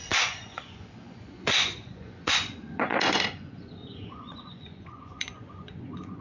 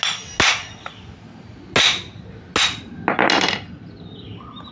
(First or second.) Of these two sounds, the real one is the second